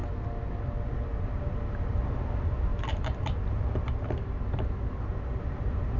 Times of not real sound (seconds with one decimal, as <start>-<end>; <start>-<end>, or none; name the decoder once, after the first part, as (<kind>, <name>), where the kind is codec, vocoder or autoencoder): none

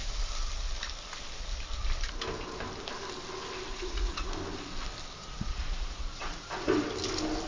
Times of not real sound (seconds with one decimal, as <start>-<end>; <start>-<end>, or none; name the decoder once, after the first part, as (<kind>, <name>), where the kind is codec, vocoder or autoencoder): 3.7-4.3 (vocoder, Vocos); 5.2-6.7

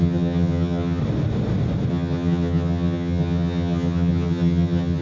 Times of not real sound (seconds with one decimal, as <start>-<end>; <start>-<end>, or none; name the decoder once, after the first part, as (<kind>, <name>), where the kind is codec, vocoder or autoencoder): 0.0-1.0 (vocoder, HiFi-GAN); 1.9-5.0

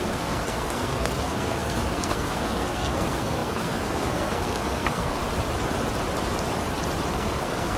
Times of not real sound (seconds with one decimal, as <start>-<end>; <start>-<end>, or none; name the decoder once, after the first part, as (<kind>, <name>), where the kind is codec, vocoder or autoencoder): 0.0-5.2 (codec, SNAC); 7.1-7.8